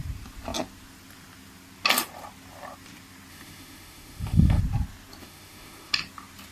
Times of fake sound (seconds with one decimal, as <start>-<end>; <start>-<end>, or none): 3.3-4.6; 5.2-5.9